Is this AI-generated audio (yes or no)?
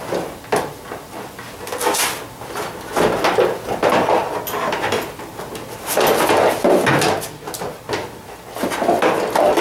no